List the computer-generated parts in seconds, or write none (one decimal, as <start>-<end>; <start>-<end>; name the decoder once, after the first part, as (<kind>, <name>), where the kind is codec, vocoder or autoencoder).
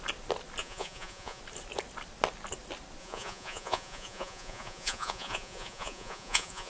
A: 0.6-1.4 (vocoder, Vocos); 3.0-6.7